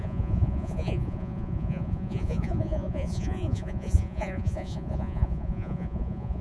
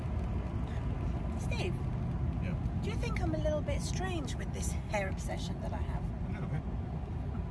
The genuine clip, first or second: second